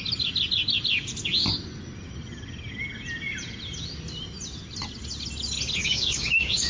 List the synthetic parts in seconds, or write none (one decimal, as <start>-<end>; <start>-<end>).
5.8-6.7